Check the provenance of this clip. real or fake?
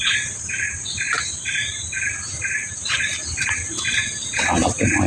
real